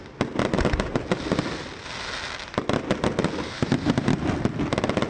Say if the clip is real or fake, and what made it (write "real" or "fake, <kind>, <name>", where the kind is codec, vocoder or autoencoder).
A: real